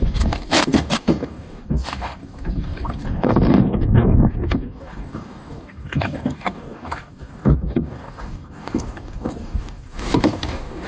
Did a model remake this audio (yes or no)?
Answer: yes